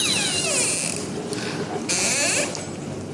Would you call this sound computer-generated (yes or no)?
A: no